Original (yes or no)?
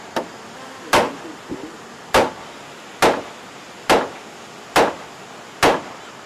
yes